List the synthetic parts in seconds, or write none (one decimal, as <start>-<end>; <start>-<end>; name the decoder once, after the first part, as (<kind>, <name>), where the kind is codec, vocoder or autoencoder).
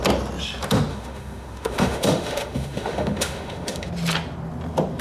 0.9-3.9 (autoencoder, DAC-VAE)